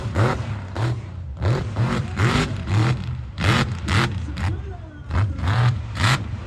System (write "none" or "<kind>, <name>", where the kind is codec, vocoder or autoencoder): vocoder, BigVGAN v2